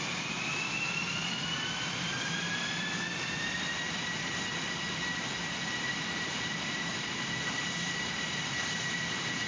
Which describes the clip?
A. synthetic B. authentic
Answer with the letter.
A